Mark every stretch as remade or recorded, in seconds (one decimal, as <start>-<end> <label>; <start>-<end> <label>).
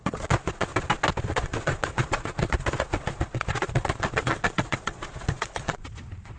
0.0-0.7 remade; 0.7-1.3 recorded; 1.3-6.4 remade